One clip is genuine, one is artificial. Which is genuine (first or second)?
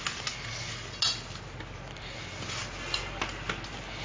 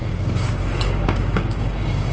first